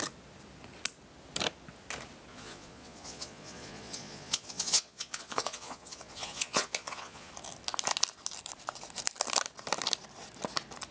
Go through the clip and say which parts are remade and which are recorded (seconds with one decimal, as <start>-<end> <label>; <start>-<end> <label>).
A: 0.0-2.3 recorded; 2.3-7.3 remade; 7.3-10.9 recorded